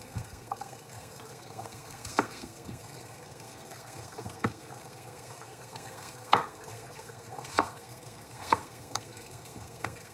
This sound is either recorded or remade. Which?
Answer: remade